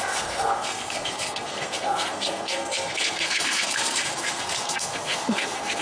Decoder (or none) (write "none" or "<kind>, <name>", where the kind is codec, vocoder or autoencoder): codec, SNAC